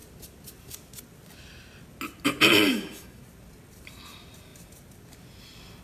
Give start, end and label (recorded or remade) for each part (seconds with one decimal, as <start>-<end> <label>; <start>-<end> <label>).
0.0-2.7 recorded; 2.7-3.2 remade; 3.2-5.8 recorded

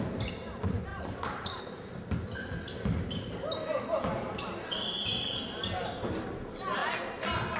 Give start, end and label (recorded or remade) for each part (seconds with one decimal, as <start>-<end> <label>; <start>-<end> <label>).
0.0-0.9 recorded; 0.9-1.6 remade; 1.6-7.6 recorded

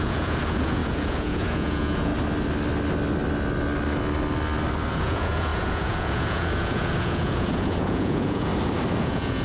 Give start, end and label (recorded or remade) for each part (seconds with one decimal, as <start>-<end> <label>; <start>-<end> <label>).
0.0-2.1 remade; 2.1-4.9 recorded; 4.9-8.5 remade; 8.5-9.0 recorded; 9.0-9.4 remade